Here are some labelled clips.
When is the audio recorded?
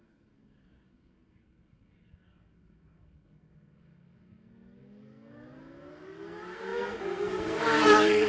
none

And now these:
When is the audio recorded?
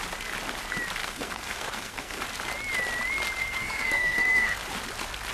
0.0-1.0; 2.2-3.4; 4.6-5.3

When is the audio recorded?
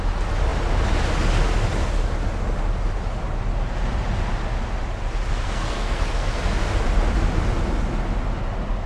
0.0-5.3; 6.4-8.9